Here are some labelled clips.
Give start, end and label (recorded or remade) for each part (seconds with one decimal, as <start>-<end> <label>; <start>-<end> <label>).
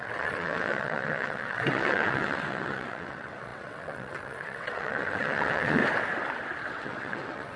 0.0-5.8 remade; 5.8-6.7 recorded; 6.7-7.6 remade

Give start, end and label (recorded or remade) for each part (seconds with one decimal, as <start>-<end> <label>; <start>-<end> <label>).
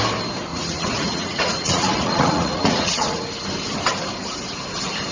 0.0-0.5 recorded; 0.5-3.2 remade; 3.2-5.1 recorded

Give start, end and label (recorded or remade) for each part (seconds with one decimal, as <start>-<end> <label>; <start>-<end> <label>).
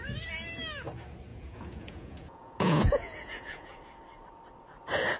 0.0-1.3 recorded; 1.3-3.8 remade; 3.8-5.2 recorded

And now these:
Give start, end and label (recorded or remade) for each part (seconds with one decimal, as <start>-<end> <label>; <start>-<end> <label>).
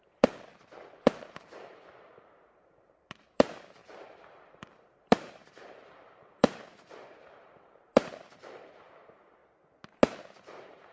0.0-0.5 remade; 0.5-1.1 recorded; 1.1-9.4 remade; 9.4-10.2 recorded; 10.2-10.9 remade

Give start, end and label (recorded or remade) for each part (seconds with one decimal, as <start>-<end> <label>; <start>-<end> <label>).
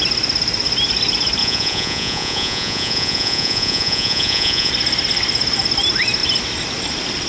0.0-1.4 recorded; 1.4-4.7 remade; 4.7-7.3 recorded